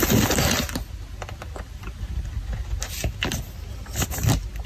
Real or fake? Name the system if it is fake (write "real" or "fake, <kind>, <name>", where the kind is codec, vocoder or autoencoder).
real